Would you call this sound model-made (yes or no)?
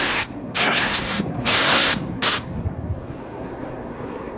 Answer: yes